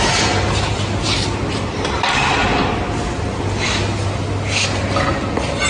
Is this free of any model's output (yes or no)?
yes